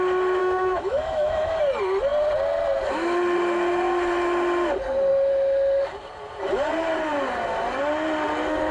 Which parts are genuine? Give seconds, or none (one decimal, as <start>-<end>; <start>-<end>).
0.0-0.4; 1.6-8.7